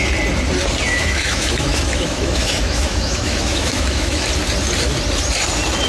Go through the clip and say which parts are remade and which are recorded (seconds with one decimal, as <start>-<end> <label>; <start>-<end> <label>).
0.0-0.9 recorded; 0.9-4.3 remade; 4.3-5.9 recorded

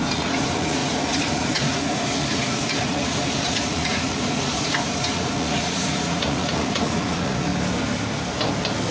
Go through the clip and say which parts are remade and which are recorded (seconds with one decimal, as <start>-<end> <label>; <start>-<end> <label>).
0.0-7.5 remade; 7.5-8.9 recorded